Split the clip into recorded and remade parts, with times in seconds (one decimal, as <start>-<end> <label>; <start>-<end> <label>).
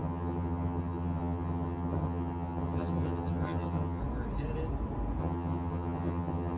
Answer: 0.0-4.0 remade; 4.0-5.2 recorded; 5.2-6.6 remade